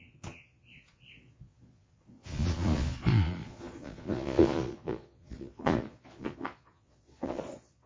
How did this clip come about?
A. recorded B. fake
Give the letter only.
B